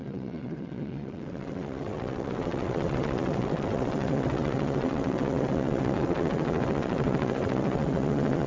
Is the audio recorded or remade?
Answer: remade